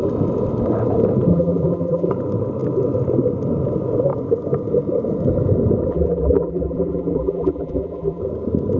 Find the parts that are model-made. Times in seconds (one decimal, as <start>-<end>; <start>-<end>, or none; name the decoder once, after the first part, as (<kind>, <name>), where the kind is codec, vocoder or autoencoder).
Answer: 1.3-2.1 (vocoder, BigVGAN v2); 5.9-8.2